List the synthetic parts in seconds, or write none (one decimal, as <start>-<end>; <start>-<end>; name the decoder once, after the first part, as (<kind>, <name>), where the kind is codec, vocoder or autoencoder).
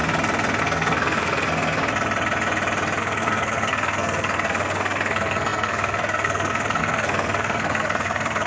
0.6-1.8 (codec, SNAC); 3.0-8.5